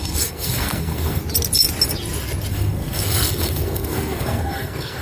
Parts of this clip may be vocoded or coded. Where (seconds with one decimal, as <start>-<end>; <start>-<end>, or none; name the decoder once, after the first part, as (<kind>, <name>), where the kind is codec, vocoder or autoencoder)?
0.0-1.2 (codec, SNAC); 2.5-5.0